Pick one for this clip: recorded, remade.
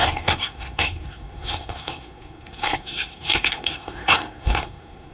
remade